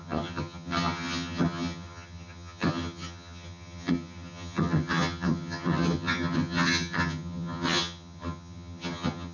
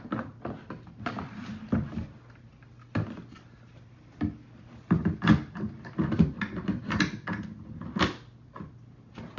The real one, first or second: second